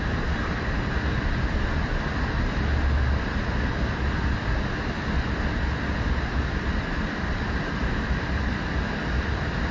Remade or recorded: recorded